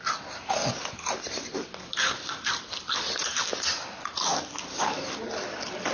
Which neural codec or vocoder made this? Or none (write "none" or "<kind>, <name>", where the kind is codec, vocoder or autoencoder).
none